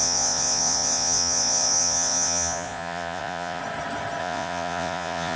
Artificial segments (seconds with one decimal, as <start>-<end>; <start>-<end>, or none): 0.0-3.6; 4.2-5.4

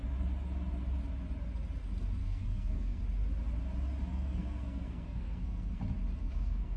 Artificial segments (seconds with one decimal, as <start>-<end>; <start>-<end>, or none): 2.2-3.0; 4.1-5.8; 6.2-6.8

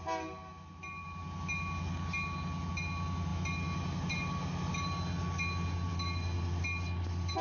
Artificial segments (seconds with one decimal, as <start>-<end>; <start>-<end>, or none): none

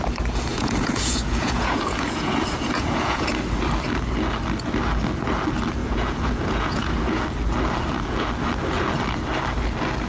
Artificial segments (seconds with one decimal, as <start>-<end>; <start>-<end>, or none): 0.5-3.3; 5.8-7.2

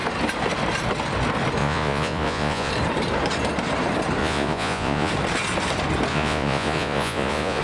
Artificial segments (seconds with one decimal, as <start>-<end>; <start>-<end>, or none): 1.6-2.7; 4.2-5.1; 6.1-7.6

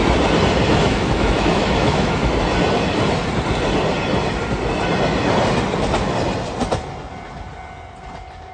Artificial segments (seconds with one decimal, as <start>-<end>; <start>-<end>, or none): 0.7-2.3